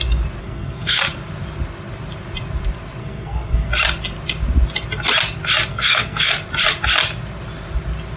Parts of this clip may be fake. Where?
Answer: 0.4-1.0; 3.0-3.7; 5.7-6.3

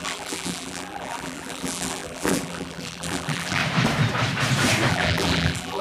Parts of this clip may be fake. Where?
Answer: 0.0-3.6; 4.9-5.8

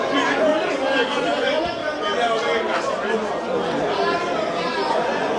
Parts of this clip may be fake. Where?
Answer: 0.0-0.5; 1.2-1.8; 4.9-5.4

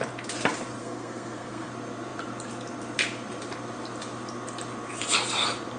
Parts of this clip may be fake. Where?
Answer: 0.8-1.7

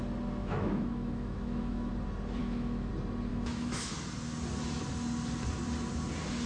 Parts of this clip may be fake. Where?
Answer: 0.4-1.9; 2.4-2.9; 3.3-3.9

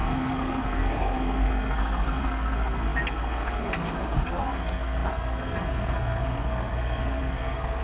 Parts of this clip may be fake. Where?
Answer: 0.0-7.8

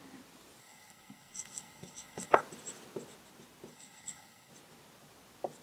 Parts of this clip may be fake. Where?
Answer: 0.6-2.4; 3.7-4.5